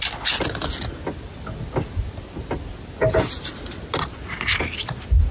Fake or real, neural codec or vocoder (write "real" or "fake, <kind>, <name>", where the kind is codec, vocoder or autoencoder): real